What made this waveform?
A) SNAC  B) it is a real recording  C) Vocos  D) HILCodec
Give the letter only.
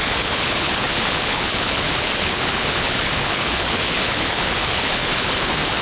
D